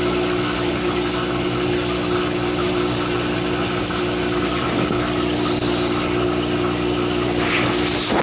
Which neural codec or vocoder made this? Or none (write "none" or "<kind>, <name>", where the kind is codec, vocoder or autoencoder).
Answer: none